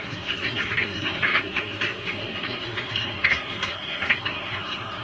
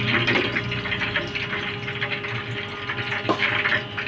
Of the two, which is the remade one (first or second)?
first